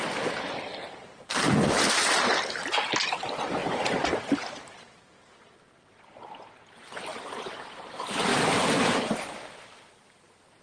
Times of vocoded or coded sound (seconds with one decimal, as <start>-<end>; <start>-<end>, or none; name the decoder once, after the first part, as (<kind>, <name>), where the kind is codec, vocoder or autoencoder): 3.6-4.3 (vocoder, BigVGAN v2); 7.1-7.8